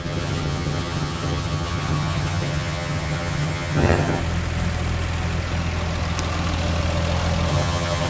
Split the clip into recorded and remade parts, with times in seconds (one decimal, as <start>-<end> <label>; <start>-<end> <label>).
0.0-4.2 remade; 4.2-7.5 recorded; 7.5-8.1 remade